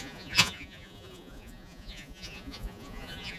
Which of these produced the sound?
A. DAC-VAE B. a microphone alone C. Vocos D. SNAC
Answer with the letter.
C